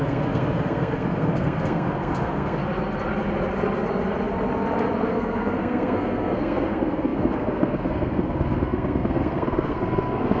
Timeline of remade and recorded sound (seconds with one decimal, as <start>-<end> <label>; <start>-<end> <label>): 0.0-2.6 remade; 2.6-5.1 recorded; 5.1-10.4 remade